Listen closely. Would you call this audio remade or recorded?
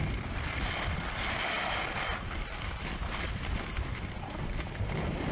recorded